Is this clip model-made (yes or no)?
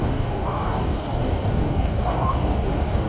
yes